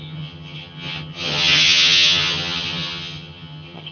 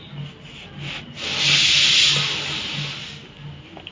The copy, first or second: first